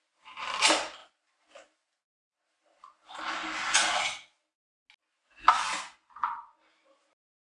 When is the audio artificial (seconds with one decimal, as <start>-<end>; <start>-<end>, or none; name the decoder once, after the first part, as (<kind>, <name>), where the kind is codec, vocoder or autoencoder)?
0.0-1.0 (vocoder, BigVGAN v2); 5.5-6.2; 6.7-7.5